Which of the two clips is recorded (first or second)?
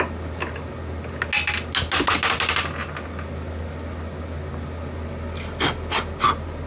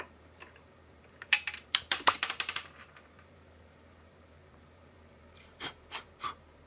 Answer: first